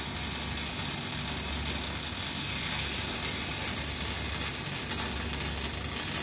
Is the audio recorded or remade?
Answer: recorded